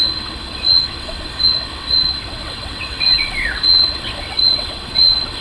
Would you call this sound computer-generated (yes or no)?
yes